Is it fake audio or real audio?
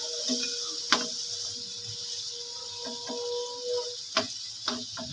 real